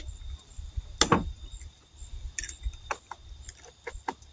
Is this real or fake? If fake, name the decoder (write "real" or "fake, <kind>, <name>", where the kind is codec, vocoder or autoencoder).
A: real